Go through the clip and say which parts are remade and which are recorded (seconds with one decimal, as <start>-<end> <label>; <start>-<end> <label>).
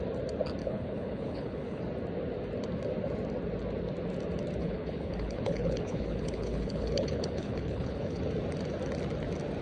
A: 0.0-0.6 recorded; 0.6-1.8 remade; 1.8-4.6 recorded; 4.6-8.2 remade; 8.2-9.6 recorded